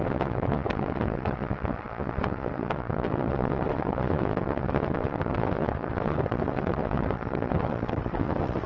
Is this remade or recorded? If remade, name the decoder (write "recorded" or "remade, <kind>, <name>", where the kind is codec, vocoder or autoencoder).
remade, vocoder, WaveNeXt